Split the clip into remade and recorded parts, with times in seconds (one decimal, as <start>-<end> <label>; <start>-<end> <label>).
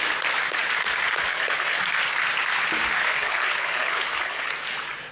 0.0-1.3 recorded; 1.3-1.8 remade; 1.8-3.0 recorded; 3.0-4.5 remade; 4.5-5.1 recorded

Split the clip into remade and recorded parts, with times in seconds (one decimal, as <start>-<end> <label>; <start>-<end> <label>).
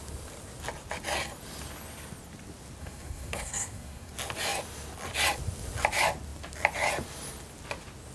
0.0-2.8 recorded; 2.8-4.1 remade; 4.1-8.1 recorded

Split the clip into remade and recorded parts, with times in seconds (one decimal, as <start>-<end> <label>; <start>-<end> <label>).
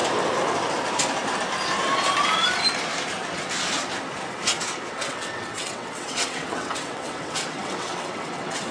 0.0-4.9 recorded; 4.9-8.7 remade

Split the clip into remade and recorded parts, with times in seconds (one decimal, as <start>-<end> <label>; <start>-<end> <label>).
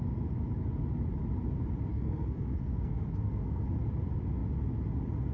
0.0-1.9 recorded; 1.9-3.7 remade; 3.7-5.3 recorded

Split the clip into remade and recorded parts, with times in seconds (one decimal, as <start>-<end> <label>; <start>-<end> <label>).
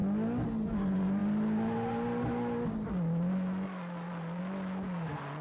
0.0-5.4 recorded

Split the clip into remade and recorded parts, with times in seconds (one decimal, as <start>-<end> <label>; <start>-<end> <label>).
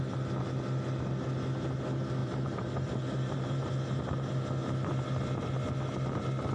0.0-2.2 recorded; 2.2-4.3 remade; 4.3-6.5 recorded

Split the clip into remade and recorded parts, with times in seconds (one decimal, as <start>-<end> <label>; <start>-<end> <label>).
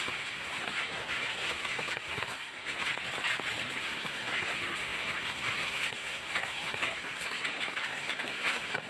0.0-2.9 remade; 2.9-3.8 recorded; 3.8-8.9 remade